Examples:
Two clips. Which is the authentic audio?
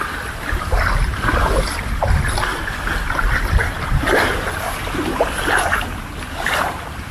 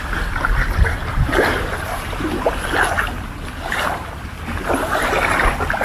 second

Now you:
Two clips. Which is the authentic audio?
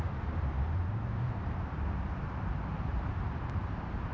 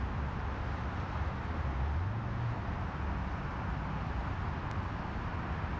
second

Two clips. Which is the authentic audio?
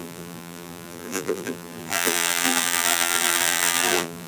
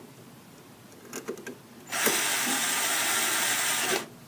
second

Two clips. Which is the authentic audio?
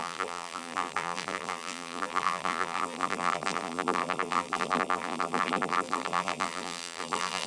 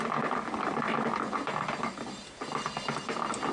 second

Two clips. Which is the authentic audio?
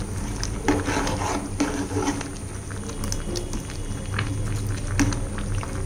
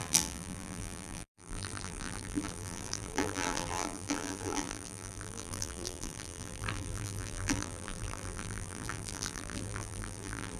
first